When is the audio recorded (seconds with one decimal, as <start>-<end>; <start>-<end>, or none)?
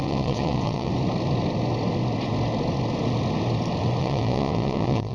0.9-4.0